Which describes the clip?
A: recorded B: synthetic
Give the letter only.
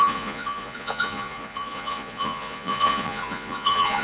B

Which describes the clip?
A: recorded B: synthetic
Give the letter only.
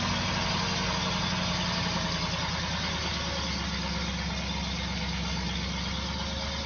A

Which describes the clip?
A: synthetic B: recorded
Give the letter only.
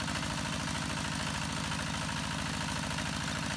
B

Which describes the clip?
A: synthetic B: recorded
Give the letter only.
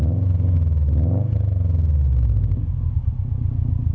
B